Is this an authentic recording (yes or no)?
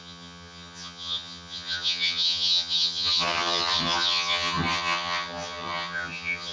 no